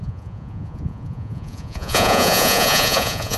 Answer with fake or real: fake